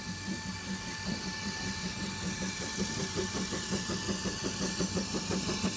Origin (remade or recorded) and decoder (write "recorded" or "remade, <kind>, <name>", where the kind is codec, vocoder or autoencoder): recorded